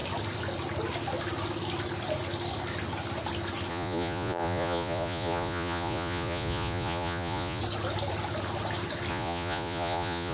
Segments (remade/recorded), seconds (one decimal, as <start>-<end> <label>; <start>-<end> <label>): 0.0-3.7 recorded; 3.7-7.6 remade; 7.6-9.1 recorded; 9.1-10.3 remade